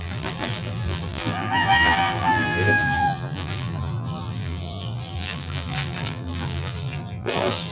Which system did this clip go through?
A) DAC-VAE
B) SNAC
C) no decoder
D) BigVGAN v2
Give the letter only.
D